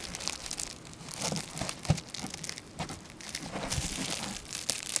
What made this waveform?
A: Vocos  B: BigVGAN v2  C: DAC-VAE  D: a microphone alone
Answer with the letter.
D